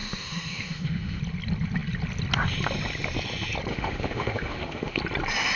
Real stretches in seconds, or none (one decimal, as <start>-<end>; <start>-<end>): 1.2-3.7; 5.0-5.6